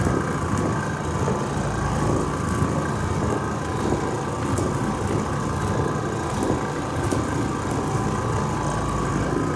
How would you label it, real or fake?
real